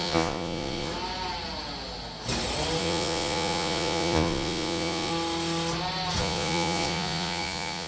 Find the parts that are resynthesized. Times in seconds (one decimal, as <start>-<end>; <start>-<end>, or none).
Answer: 0.0-0.9; 2.8-5.1; 6.2-7.9